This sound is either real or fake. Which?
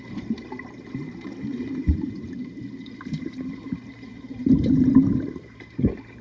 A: fake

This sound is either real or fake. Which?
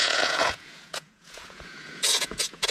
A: fake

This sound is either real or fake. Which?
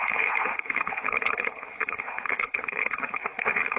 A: fake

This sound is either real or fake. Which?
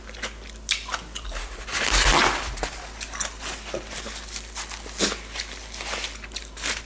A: real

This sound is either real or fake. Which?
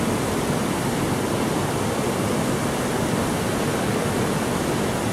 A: real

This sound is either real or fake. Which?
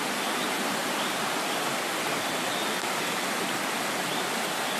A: real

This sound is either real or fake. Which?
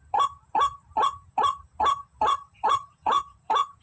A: fake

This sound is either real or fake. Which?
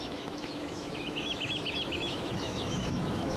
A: fake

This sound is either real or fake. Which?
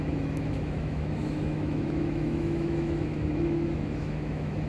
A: fake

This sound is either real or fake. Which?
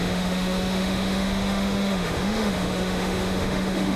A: fake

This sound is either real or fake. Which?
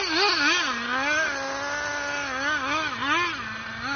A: real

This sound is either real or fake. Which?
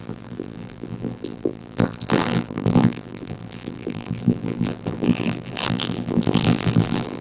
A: fake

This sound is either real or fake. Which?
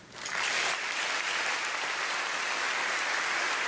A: real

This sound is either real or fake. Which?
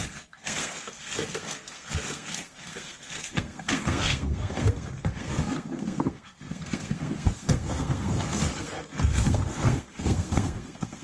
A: fake